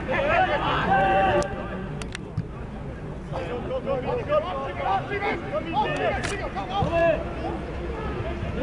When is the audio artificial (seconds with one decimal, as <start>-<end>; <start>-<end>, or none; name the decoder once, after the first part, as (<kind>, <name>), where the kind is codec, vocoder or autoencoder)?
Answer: none